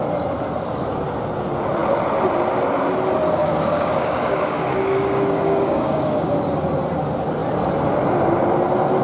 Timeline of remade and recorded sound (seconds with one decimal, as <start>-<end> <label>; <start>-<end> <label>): 0.0-3.4 recorded; 3.4-6.3 remade; 6.3-9.0 recorded